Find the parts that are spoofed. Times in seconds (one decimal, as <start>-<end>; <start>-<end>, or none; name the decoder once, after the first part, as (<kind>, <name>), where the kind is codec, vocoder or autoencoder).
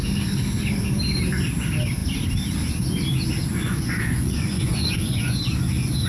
3.5-5.4 (vocoder, Vocos)